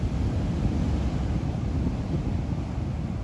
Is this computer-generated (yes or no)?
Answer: no